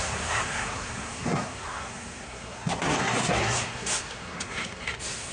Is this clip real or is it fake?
fake